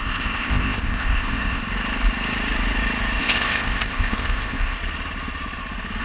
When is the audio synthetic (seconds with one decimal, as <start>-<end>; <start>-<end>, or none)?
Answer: 0.0-1.6; 3.2-4.8

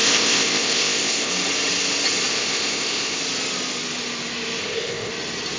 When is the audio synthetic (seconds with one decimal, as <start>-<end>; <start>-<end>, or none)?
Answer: 0.0-1.3; 2.3-3.2; 4.6-5.1

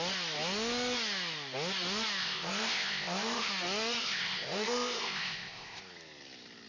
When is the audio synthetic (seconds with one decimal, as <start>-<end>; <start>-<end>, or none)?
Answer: 2.2-3.5; 4.0-5.8

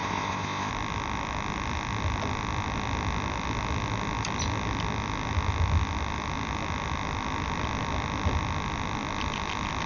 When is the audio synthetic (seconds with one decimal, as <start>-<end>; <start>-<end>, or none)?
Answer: 0.0-0.7

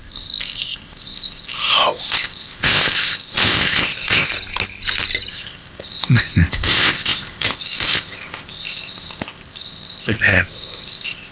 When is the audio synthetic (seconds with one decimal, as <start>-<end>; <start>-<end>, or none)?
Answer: 0.0-4.3; 5.3-11.3